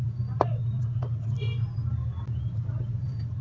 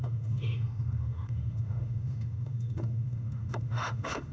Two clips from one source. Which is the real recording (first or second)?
first